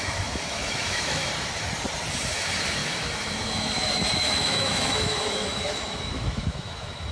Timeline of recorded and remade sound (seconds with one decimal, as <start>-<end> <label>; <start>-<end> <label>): 0.0-1.3 remade; 1.3-2.1 recorded; 2.1-7.1 remade